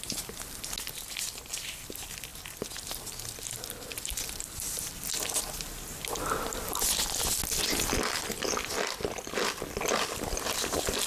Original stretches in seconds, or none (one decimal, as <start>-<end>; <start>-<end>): 0.0-11.1